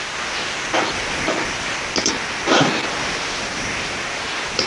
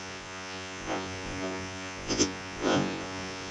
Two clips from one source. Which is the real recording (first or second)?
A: first